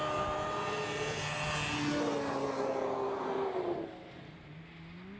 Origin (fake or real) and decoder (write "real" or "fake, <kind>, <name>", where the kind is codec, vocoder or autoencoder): real